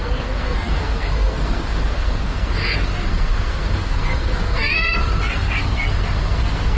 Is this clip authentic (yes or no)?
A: no